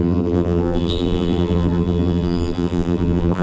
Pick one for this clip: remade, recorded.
remade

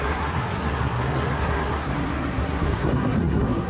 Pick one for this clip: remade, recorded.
remade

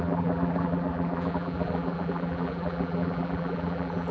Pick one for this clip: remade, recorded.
remade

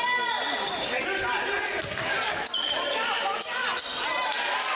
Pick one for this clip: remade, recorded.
recorded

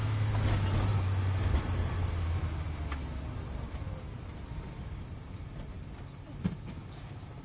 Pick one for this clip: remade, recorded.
recorded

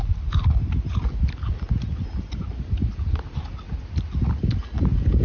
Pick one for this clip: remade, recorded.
recorded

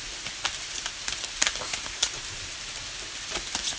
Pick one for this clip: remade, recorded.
recorded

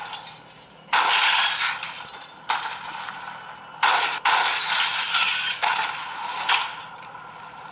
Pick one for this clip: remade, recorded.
recorded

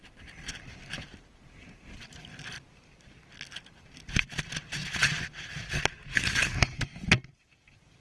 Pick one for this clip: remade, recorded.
recorded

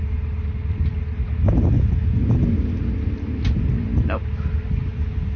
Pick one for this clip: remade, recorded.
recorded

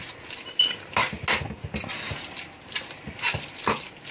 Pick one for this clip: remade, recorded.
recorded